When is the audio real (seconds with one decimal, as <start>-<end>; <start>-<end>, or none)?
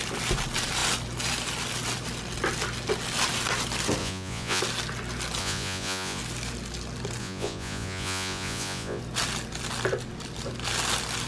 0.0-4.0; 4.6-5.4; 6.2-7.2; 9.0-11.3